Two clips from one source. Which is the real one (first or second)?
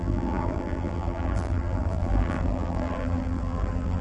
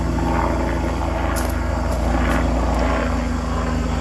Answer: second